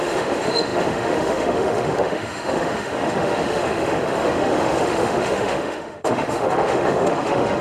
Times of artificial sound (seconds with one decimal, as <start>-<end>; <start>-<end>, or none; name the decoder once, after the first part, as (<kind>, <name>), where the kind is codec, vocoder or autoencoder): 0.0-7.6 (autoencoder, DAC-VAE)